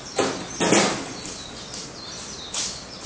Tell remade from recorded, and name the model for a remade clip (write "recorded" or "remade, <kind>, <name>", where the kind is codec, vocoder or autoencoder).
recorded